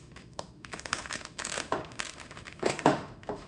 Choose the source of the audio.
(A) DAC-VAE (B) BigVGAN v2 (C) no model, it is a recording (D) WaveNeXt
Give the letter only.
A